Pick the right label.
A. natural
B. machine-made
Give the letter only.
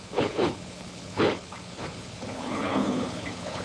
B